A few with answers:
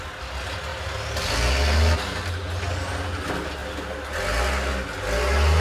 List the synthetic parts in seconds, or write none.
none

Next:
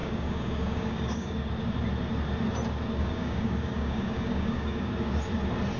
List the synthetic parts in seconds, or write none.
0.0-1.5 (codec, DAC); 3.0-4.9

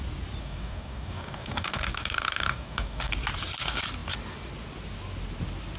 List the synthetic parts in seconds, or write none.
0.4-3.1 (codec, DAC)

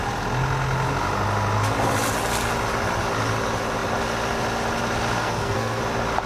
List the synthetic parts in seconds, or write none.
5.2-5.8 (codec, SNAC)